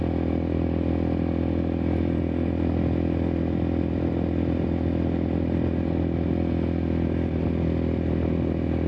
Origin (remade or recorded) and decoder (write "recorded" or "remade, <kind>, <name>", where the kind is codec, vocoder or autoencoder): recorded